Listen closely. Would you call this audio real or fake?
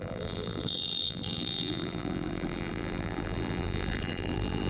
fake